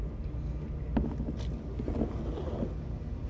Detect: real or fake real